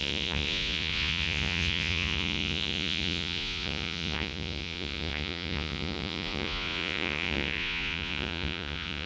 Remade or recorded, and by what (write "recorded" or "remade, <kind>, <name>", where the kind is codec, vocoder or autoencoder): remade, vocoder, Vocos